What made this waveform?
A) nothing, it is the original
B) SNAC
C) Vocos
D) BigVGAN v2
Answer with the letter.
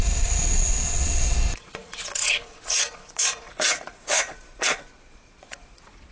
C